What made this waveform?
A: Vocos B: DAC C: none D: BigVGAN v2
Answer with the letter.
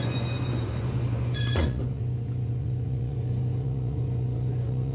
A